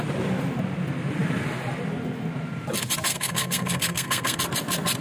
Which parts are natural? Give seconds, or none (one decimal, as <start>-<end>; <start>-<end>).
0.0-3.1; 4.4-5.0